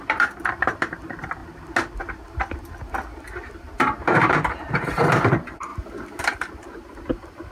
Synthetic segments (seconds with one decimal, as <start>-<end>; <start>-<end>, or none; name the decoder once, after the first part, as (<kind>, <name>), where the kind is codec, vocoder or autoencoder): 0.0-1.4 (vocoder, BigVGAN v2); 3.6-5.7; 6.2-7.5